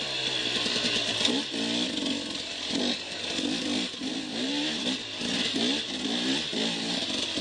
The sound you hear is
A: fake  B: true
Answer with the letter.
B